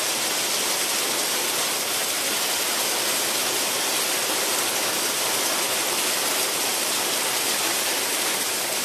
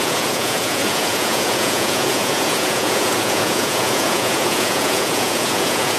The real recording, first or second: first